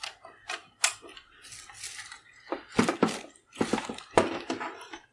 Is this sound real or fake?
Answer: real